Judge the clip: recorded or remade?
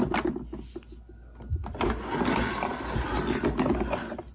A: recorded